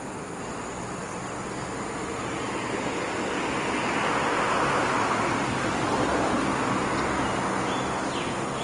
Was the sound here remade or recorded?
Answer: recorded